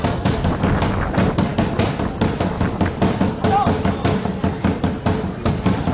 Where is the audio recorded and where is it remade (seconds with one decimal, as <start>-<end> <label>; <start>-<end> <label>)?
0.0-5.9 recorded

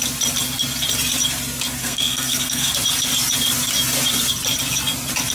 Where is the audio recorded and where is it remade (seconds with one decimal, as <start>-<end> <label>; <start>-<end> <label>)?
0.0-1.8 recorded; 1.8-2.7 remade; 2.7-5.3 recorded

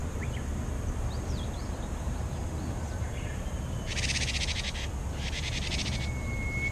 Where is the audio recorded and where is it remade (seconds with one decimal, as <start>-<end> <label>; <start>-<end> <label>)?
0.0-3.9 remade; 3.9-6.7 recorded

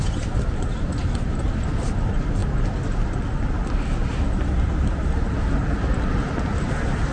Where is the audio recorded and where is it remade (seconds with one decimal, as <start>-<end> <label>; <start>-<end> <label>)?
0.0-7.1 recorded

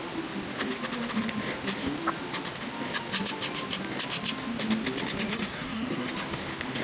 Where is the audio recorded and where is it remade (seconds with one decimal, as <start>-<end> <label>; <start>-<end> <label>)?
0.0-5.3 recorded; 5.3-6.1 remade; 6.1-6.8 recorded

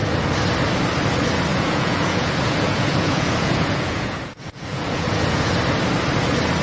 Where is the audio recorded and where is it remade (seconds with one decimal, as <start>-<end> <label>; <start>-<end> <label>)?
0.0-1.5 recorded; 1.5-5.5 remade; 5.5-6.6 recorded

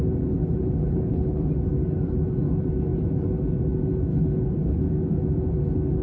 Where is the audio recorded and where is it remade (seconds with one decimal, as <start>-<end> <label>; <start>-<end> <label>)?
0.0-0.4 recorded; 0.4-1.5 remade; 1.5-4.1 recorded; 4.1-4.8 remade; 4.8-6.0 recorded

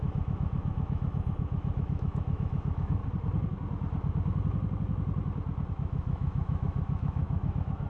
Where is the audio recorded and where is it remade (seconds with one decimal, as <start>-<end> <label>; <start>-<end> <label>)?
0.0-3.0 remade; 3.0-5.7 recorded; 5.7-7.9 remade